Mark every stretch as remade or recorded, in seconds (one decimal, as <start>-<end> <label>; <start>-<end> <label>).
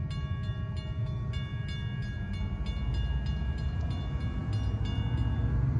0.0-5.8 recorded